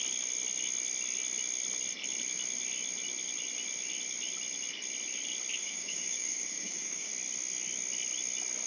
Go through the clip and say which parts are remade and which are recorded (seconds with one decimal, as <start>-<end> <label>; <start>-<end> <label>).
0.0-5.6 recorded; 5.6-7.1 remade; 7.1-8.7 recorded